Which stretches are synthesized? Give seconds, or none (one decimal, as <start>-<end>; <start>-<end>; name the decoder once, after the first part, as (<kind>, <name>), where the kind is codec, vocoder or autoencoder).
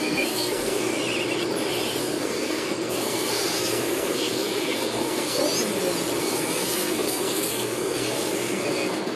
0.0-0.9 (codec, SNAC); 2.0-5.4; 6.2-9.2